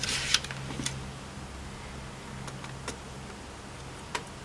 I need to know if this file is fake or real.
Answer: real